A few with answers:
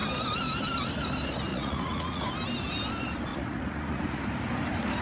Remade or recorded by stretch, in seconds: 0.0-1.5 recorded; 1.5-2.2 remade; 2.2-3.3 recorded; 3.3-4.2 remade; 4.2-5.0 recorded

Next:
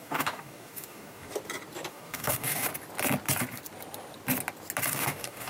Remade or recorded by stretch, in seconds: 0.0-1.3 remade; 1.3-1.9 recorded; 1.9-2.7 remade; 2.7-4.9 recorded; 4.9-5.5 remade